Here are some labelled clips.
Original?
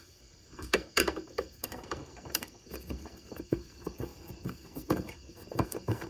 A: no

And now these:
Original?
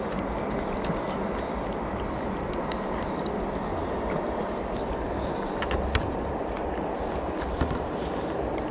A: yes